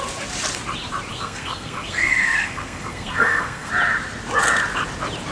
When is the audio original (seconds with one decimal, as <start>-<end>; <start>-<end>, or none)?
0.0-1.1; 3.7-5.3